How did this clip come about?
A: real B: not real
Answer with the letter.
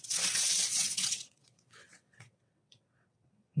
B